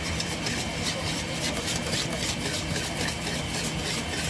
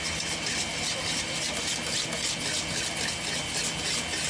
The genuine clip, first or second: second